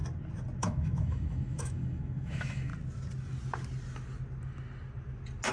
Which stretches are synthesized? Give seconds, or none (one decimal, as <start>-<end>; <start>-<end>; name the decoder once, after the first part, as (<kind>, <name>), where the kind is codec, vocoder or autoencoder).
0.6-2.7 (autoencoder, DAC-VAE)